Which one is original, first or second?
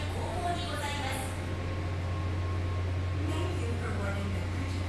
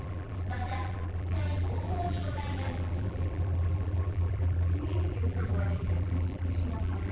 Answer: first